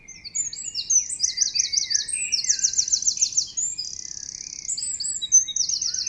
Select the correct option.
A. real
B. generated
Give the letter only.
A